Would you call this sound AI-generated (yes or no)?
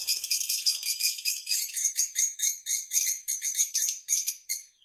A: yes